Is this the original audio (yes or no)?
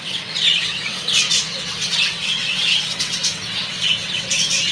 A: no